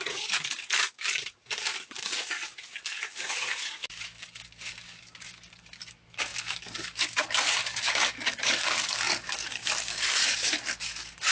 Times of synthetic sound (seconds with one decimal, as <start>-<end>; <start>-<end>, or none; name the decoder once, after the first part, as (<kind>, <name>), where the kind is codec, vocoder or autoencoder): 0.0-11.3 (codec, DAC)